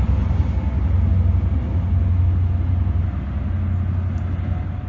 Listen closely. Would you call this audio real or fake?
real